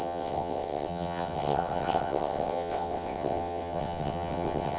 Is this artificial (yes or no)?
yes